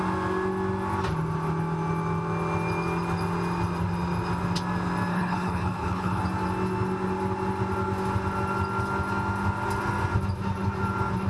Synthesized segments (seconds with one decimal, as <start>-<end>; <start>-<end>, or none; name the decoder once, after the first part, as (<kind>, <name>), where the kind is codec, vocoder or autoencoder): 5.1-6.2 (codec, HILCodec)